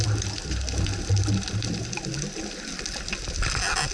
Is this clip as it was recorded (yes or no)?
yes